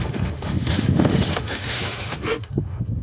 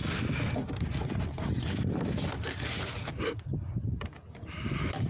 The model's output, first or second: first